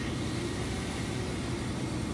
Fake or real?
real